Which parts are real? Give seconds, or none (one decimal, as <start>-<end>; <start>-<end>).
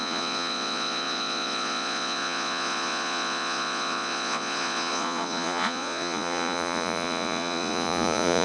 none